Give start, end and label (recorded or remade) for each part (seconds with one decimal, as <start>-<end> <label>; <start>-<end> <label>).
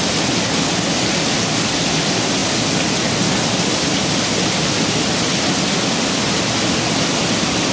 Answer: 0.0-7.7 recorded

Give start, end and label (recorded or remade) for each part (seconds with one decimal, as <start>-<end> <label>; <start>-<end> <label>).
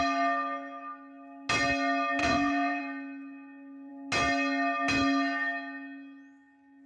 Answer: 0.0-2.2 recorded; 2.2-2.8 remade; 2.8-6.9 recorded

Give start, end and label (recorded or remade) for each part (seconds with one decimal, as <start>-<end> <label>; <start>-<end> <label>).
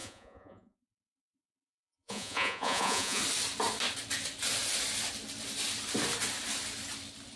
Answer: 0.0-3.2 remade; 3.2-7.4 recorded